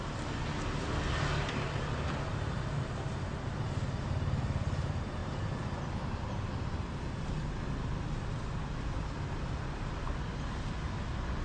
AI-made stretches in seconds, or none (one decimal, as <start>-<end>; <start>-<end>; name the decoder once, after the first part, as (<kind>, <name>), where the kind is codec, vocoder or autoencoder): none